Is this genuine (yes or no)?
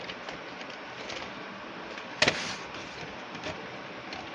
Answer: yes